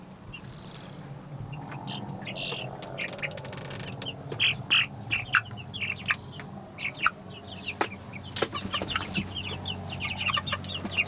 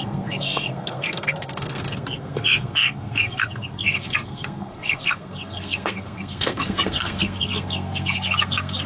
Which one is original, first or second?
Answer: first